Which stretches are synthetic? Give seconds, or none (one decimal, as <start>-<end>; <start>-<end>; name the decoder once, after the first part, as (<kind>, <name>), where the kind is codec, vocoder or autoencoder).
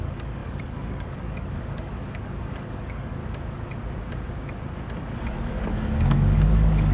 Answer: 0.0-3.2 (codec, DAC); 5.5-6.9